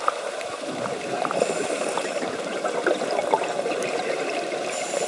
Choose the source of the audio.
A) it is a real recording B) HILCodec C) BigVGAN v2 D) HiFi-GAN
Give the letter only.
C